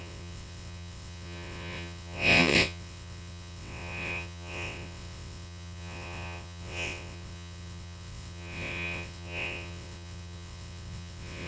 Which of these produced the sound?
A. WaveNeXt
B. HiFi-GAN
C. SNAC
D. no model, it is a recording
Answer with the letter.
A